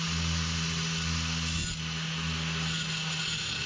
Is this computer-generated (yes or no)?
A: no